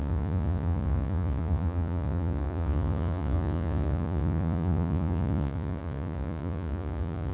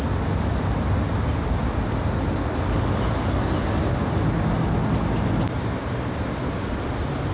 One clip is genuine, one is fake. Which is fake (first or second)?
first